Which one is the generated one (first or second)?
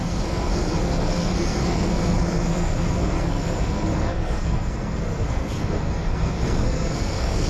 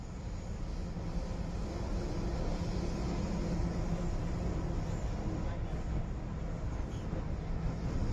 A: first